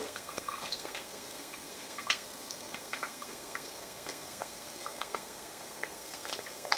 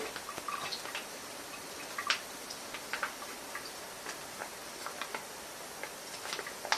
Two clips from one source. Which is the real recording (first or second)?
second